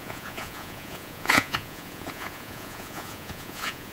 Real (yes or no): no